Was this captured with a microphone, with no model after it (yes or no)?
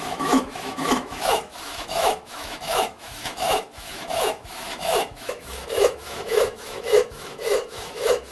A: no